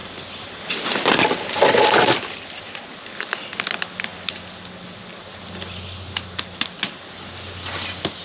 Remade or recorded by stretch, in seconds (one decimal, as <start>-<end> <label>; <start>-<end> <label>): 0.0-8.2 recorded